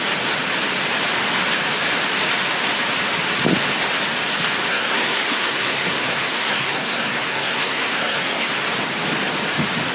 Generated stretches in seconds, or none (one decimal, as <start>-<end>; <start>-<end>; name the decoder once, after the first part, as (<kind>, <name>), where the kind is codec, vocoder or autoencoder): 4.7-8.5 (codec, SNAC)